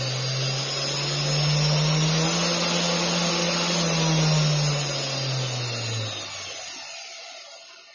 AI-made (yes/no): no